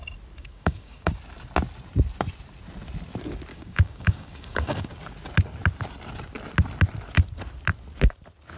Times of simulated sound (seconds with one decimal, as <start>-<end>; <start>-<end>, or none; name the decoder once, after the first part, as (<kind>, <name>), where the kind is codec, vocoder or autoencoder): 0.4-1.1 (codec, DAC); 3.5-5.0